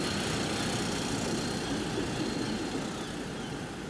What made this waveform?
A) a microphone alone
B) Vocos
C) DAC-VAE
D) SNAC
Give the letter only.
A